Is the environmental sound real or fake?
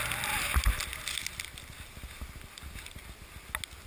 real